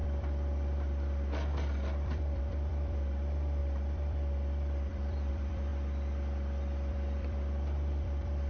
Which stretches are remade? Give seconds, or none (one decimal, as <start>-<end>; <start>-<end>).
0.0-5.7; 6.9-8.5